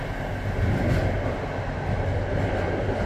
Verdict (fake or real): real